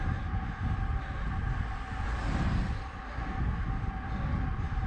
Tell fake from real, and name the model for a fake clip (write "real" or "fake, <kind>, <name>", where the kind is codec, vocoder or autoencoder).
real